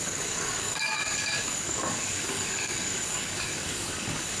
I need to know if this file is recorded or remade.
remade